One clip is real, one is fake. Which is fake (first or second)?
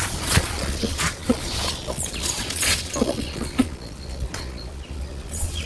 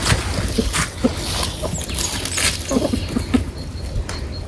first